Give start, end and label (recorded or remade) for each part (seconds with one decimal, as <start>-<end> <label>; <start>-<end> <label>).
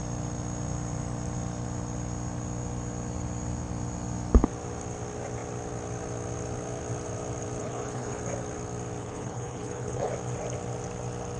0.0-7.6 recorded; 7.6-8.2 remade; 8.2-9.0 recorded; 9.0-10.1 remade; 10.1-11.4 recorded